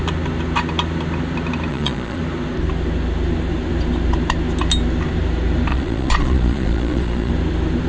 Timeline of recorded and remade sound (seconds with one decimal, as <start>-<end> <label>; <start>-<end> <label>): 0.0-1.7 recorded; 1.7-2.2 remade; 2.2-5.7 recorded; 5.7-7.3 remade; 7.3-7.9 recorded